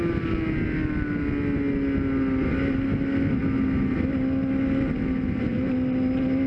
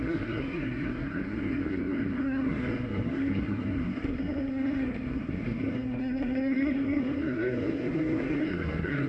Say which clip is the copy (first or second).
second